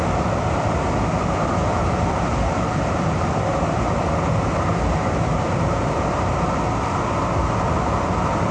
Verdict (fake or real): real